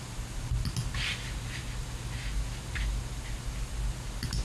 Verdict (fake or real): real